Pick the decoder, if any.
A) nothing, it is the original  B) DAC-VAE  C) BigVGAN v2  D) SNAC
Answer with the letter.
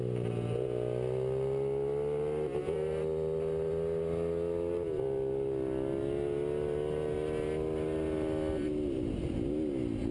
A